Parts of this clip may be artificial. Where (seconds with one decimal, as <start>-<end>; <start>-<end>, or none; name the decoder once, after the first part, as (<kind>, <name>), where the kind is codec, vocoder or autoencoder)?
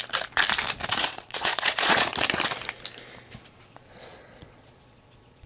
0.9-2.1 (vocoder, Vocos); 3.5-5.5